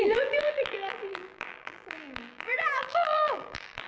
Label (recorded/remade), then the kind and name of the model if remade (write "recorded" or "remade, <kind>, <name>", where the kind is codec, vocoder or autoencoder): remade, vocoder, BigVGAN v2